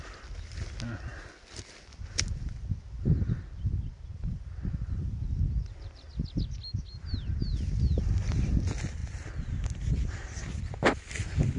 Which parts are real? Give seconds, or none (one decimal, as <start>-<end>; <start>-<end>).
0.0-11.6